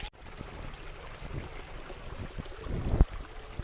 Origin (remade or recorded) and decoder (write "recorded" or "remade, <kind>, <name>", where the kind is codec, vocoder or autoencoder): recorded